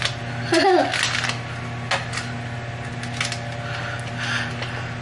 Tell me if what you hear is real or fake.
real